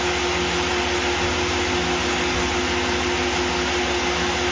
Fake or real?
real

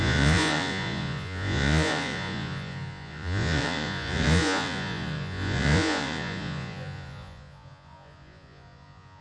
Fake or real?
fake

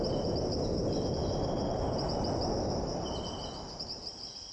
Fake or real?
fake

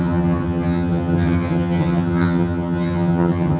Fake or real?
fake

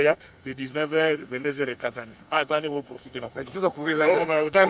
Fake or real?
fake